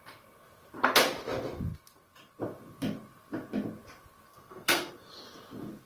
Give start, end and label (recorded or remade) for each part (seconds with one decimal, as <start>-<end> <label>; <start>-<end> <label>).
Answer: 0.0-4.3 recorded; 4.3-4.9 remade; 4.9-5.9 recorded